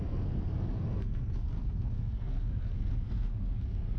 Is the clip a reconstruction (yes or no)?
yes